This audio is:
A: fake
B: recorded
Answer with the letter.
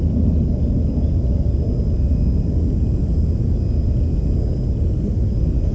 B